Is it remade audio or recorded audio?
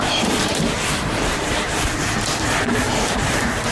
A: remade